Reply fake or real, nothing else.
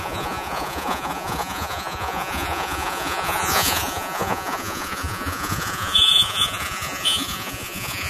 fake